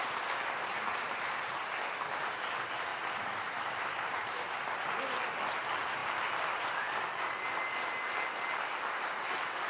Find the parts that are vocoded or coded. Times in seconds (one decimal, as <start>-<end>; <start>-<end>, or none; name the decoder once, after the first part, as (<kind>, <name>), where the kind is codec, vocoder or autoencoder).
0.7-1.6 (vocoder, BigVGAN v2); 2.9-4.4